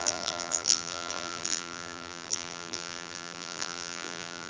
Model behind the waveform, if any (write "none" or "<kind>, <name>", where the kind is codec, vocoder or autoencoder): vocoder, BigVGAN v2